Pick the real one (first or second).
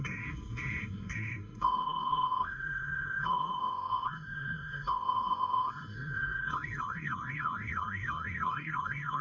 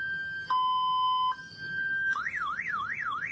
second